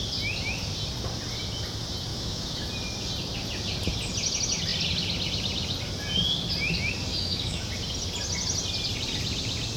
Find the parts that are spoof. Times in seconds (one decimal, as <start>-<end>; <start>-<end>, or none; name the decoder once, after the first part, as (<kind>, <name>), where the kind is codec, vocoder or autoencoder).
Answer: 2.1-2.7 (autoencoder, DAC-VAE); 7.1-7.7